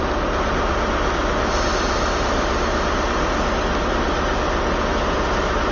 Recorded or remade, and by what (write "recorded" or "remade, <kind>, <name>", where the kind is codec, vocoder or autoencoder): recorded